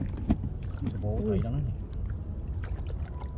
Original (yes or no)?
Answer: yes